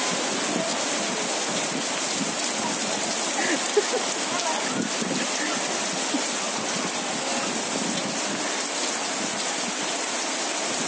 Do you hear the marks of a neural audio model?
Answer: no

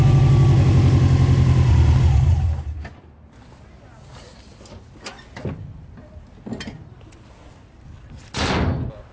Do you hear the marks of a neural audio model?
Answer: no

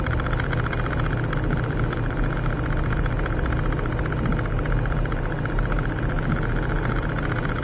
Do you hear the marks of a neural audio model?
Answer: no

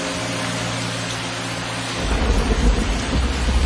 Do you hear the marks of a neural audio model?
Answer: no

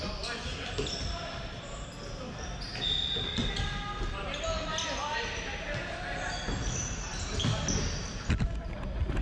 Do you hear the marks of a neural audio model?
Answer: no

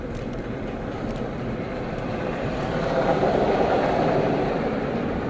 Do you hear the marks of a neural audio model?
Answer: yes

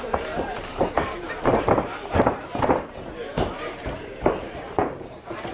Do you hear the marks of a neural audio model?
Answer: yes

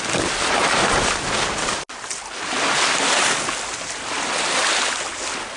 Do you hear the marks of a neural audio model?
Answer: no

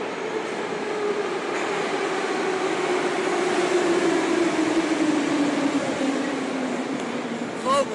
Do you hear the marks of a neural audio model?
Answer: no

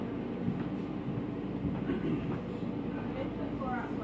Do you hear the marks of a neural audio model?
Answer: no